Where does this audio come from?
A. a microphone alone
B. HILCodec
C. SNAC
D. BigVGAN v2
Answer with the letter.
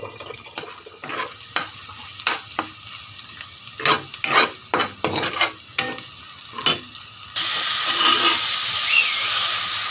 A